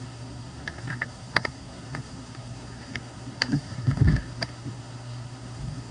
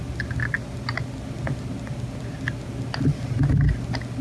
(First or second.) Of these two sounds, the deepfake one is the first